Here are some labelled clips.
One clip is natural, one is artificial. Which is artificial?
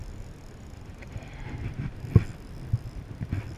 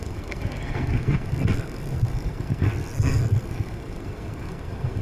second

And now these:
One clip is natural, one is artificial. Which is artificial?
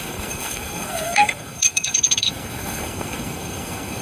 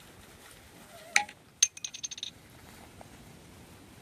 first